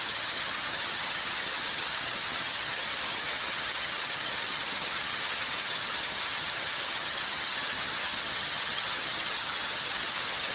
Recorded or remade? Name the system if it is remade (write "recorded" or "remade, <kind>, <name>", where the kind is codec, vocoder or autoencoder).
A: remade, vocoder, HiFi-GAN